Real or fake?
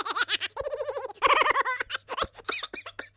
real